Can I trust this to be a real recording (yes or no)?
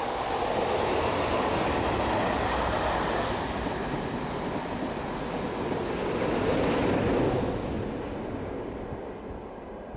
yes